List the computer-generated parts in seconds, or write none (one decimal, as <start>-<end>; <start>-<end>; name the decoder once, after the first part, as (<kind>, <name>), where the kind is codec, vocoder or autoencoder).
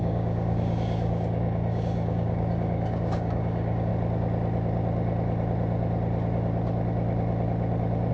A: 0.0-3.9 (codec, DAC)